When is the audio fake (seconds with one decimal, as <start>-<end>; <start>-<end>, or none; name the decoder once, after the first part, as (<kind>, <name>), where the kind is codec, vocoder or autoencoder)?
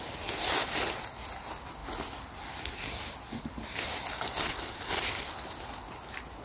none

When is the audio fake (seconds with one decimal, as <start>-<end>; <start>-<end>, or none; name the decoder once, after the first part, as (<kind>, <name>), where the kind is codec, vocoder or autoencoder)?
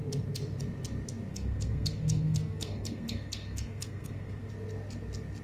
1.3-4.5 (codec, SNAC)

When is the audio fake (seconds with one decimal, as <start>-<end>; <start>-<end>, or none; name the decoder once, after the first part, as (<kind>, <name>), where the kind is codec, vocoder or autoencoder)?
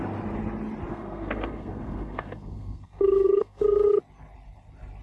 0.9-3.9 (codec, SNAC)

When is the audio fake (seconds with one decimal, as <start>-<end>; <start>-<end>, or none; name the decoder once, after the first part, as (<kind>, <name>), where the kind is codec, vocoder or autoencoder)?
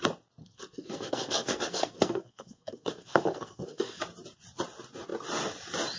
0.4-4.0 (codec, SNAC)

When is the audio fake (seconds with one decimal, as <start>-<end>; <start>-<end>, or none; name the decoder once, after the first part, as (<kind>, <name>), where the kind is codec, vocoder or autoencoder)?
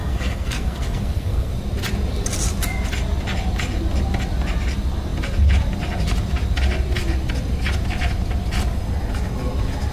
0.0-1.5 (codec, SNAC)